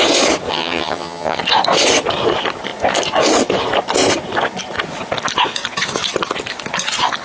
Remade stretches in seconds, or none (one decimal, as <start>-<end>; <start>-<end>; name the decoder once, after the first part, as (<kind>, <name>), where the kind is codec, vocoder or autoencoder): 0.5-1.4 (vocoder, HiFi-GAN)